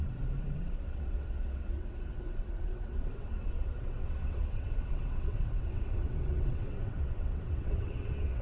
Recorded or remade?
remade